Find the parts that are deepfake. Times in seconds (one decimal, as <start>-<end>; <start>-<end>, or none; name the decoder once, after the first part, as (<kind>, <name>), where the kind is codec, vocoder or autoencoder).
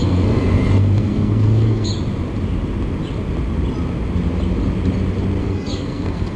0.0-1.9 (codec, SNAC); 5.4-6.4